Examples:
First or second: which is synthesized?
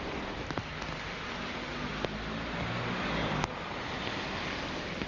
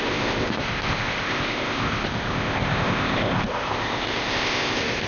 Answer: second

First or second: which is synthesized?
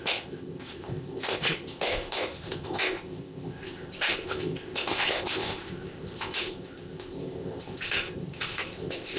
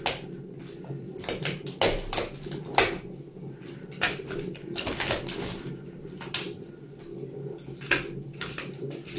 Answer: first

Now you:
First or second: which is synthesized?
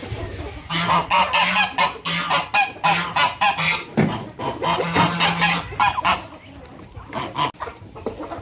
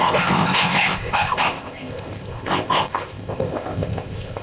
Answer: second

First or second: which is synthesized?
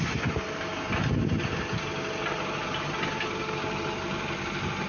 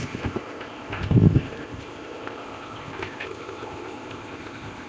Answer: second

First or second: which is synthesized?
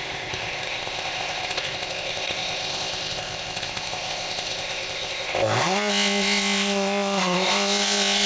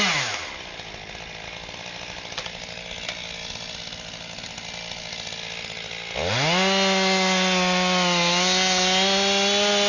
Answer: first